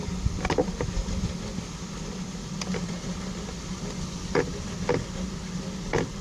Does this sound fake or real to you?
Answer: real